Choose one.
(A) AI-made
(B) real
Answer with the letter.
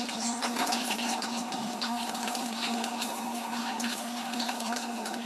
A